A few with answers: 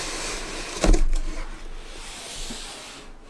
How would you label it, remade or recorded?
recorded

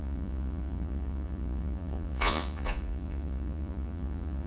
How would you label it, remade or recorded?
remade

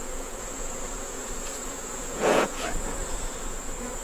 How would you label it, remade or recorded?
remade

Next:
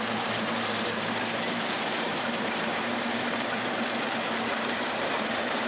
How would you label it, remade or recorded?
remade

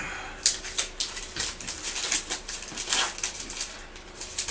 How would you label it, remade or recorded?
recorded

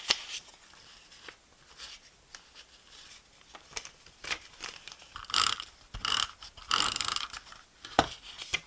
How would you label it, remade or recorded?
recorded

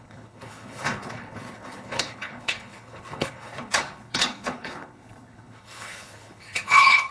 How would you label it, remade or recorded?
remade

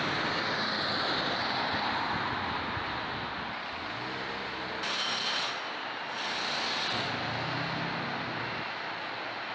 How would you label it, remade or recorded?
recorded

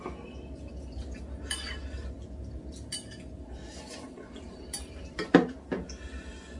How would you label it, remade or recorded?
recorded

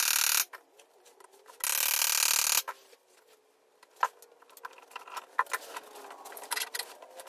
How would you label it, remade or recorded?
recorded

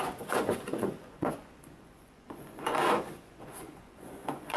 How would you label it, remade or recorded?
remade